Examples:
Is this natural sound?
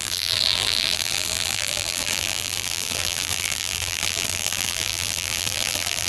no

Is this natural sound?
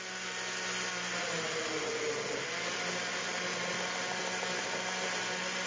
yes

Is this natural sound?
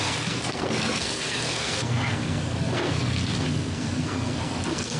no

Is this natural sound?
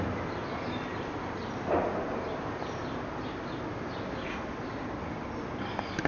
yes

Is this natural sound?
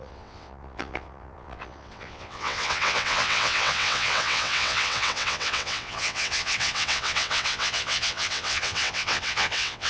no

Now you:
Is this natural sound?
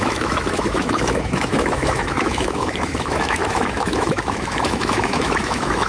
no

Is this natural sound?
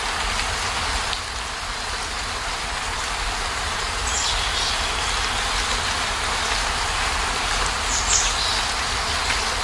yes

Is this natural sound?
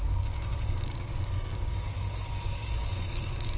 no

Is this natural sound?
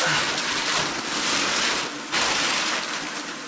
yes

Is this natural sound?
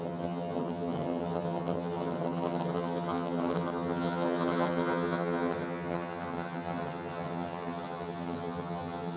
no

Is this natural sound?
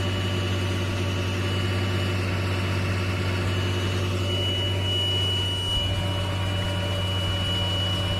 yes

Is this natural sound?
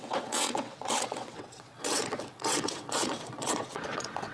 no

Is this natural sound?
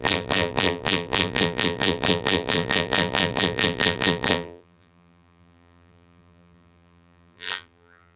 no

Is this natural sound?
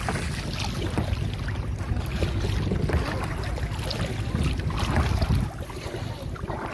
yes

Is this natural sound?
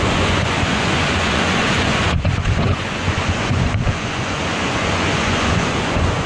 no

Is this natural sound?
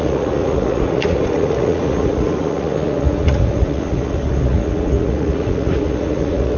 no